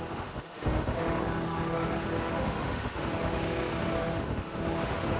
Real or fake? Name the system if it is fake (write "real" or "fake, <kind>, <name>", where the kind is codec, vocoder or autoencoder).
fake, autoencoder, DAC-VAE